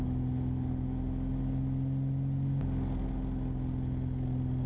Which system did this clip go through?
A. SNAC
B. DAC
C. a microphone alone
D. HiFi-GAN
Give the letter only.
C